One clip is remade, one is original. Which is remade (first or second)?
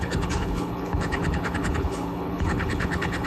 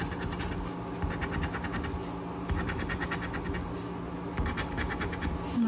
first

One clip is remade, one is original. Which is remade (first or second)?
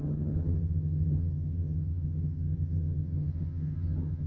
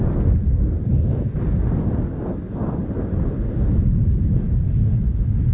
first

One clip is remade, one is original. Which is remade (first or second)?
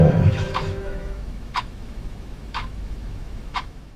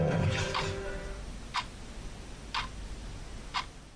first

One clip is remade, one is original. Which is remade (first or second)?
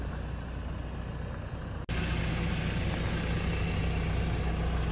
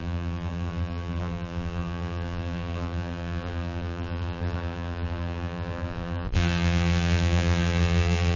second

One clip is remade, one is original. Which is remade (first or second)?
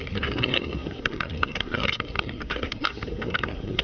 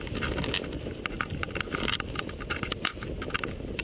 first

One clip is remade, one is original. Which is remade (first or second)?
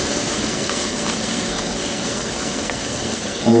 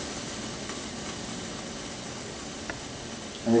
first